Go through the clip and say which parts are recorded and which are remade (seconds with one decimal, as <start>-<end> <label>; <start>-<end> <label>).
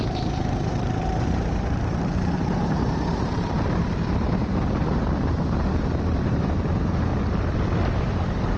0.0-7.1 remade; 7.1-8.0 recorded; 8.0-8.6 remade